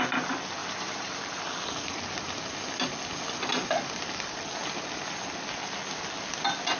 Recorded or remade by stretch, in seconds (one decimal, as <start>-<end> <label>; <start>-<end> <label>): 0.0-0.6 recorded; 0.6-1.4 remade; 1.4-6.8 recorded